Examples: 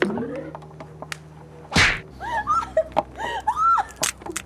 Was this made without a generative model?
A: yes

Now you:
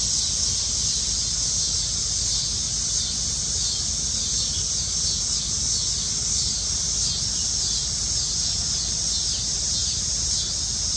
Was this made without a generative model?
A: yes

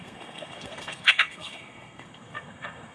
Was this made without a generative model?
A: no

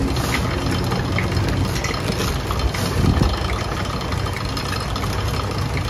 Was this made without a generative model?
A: yes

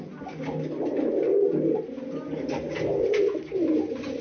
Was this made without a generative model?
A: yes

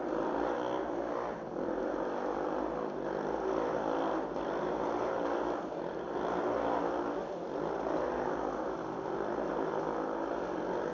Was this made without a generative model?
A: yes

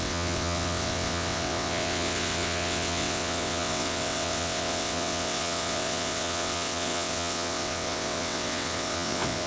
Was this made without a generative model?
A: no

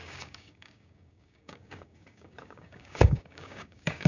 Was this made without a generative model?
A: no